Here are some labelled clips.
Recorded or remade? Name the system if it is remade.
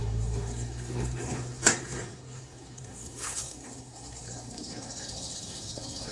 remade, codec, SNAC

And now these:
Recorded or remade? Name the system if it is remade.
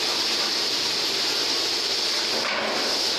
recorded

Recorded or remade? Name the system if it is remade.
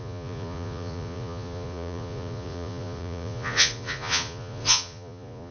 remade, vocoder, Vocos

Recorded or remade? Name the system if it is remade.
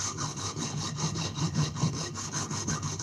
remade, codec, HILCodec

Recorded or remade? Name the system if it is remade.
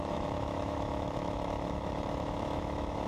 remade, autoencoder, DAC-VAE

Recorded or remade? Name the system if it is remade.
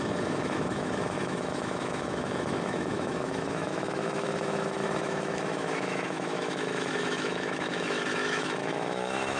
remade, autoencoder, DAC-VAE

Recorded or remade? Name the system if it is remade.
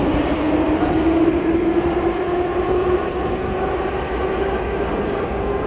recorded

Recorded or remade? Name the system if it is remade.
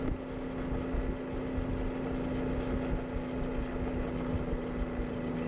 recorded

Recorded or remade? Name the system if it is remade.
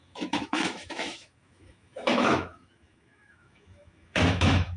remade, autoencoder, DAC-VAE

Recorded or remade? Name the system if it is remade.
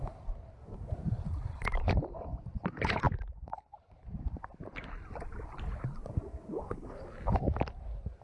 recorded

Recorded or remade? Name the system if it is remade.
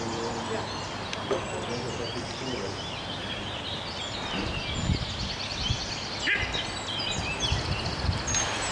recorded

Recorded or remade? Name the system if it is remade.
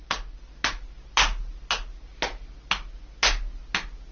recorded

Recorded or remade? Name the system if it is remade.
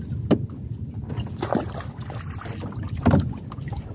recorded